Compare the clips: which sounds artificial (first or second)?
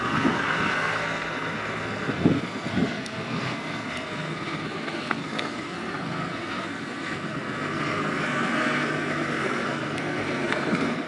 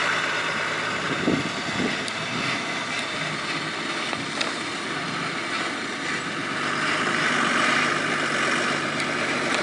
first